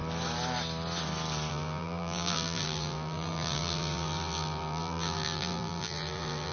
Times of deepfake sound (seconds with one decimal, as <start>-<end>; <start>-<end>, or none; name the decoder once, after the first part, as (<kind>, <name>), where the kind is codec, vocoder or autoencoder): 1.5-6.5 (vocoder, BigVGAN v2)